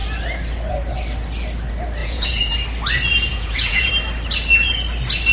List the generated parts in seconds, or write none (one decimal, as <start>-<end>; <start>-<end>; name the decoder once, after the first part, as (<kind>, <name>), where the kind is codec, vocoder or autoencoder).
2.0-2.5 (vocoder, Vocos); 3.3-3.9